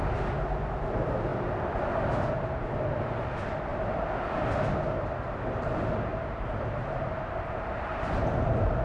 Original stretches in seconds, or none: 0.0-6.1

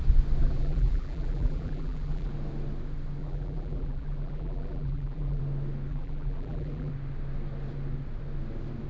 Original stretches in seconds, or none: 0.0-0.4; 2.3-3.2; 5.4-5.9; 6.9-8.9

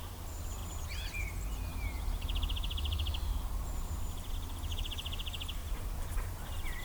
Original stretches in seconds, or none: 0.0-0.6; 1.2-1.7; 4.3-5.6